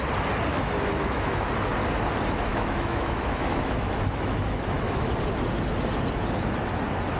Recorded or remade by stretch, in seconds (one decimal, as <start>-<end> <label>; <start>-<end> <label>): 0.0-0.5 recorded; 0.5-1.5 remade; 1.5-2.5 recorded; 2.5-5.1 remade; 5.1-7.2 recorded